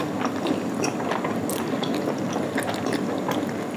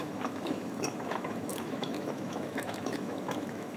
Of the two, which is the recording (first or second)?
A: first